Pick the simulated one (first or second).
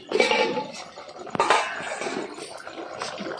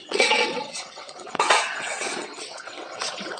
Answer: second